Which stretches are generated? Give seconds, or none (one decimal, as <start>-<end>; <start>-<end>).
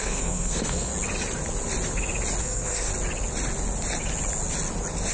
0.0-0.9; 2.4-2.9